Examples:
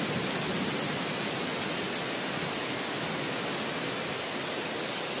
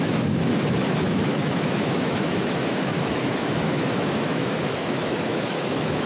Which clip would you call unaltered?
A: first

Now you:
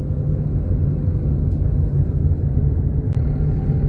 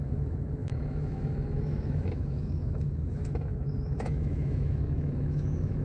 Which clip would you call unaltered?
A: first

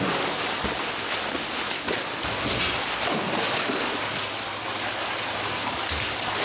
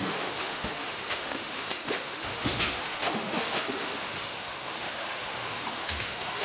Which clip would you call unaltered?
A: first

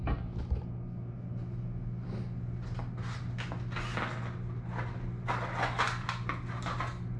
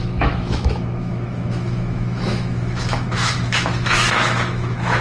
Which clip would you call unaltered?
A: first